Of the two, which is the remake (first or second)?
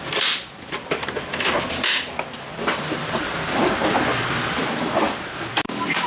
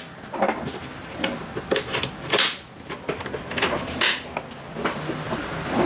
first